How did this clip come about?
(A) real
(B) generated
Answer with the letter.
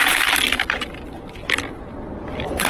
A